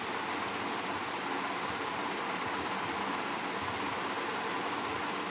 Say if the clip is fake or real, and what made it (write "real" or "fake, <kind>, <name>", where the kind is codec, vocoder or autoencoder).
real